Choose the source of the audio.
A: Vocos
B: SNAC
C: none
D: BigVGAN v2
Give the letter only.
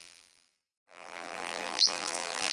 D